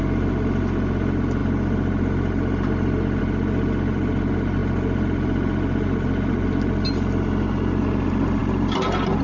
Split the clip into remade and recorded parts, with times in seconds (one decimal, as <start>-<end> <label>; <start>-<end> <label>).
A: 0.0-9.2 recorded